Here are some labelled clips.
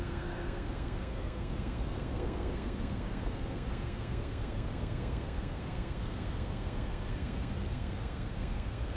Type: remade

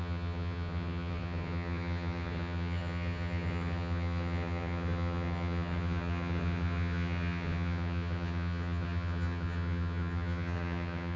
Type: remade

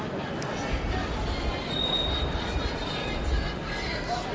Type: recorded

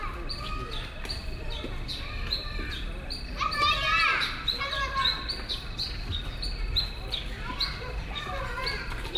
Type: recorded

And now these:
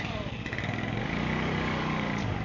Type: remade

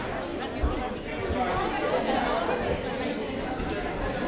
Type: recorded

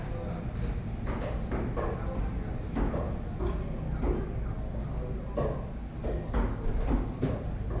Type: recorded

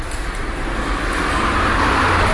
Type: recorded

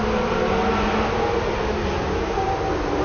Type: recorded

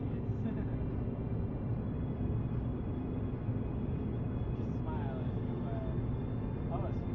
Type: recorded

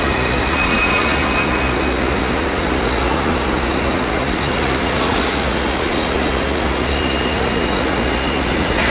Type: remade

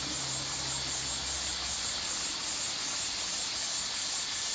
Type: recorded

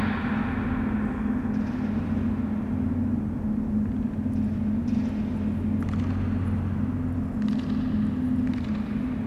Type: recorded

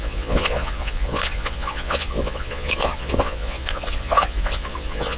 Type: remade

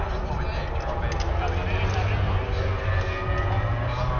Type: recorded